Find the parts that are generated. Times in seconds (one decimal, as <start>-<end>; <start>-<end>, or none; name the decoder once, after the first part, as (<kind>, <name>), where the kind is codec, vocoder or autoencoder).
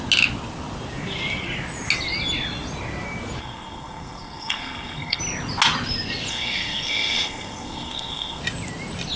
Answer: 3.4-5.2 (codec, SNAC); 6.3-8.4